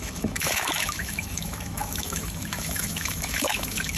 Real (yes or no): no